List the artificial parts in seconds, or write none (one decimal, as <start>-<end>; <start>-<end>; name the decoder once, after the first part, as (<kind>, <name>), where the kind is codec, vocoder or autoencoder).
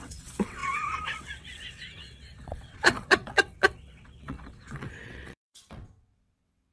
0.0-6.7 (vocoder, WaveNeXt)